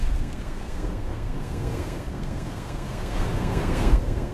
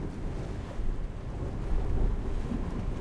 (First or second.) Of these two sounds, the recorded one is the second